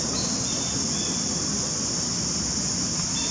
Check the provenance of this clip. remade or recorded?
recorded